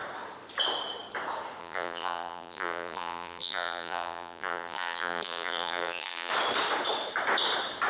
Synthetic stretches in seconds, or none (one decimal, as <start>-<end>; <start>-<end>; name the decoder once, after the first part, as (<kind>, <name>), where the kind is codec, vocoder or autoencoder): 1.6-6.3 (vocoder, BigVGAN v2)